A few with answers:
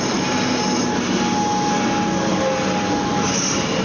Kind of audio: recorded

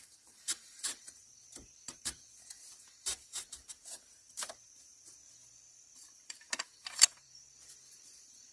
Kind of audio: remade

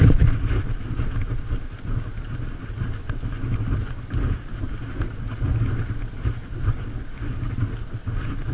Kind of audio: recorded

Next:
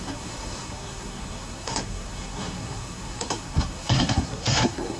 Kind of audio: remade